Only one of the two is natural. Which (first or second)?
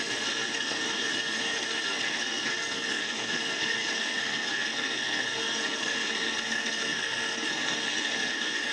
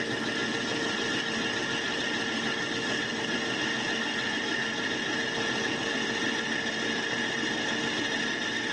second